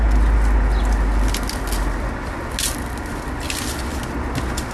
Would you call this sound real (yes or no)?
yes